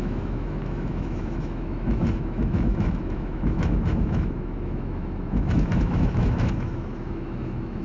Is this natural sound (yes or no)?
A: no